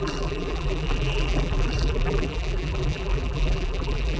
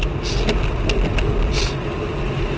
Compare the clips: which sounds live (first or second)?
second